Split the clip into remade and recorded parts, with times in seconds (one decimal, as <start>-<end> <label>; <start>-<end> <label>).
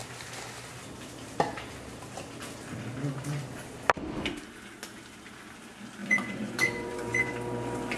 0.0-6.0 recorded; 6.0-7.3 remade; 7.3-8.0 recorded